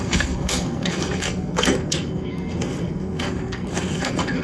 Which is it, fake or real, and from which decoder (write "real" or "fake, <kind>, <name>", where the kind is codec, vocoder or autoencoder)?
fake, codec, SNAC